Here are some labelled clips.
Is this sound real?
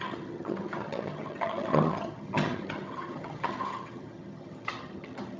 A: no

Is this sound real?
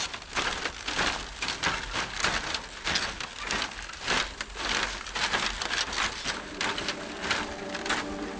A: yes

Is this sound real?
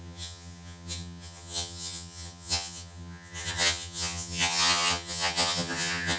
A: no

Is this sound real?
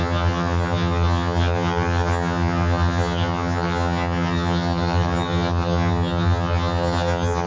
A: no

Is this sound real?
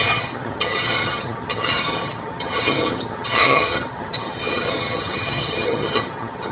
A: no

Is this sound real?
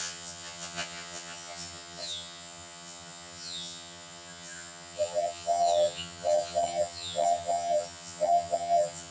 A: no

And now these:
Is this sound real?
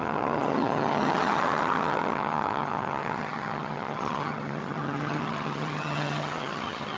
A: no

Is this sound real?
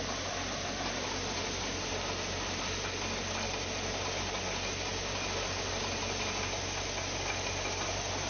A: yes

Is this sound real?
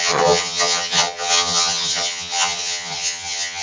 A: no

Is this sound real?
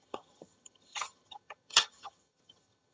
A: no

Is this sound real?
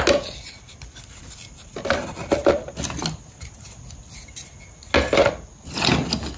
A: yes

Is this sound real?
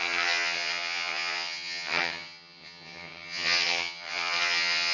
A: no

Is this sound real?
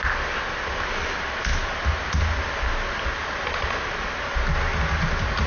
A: yes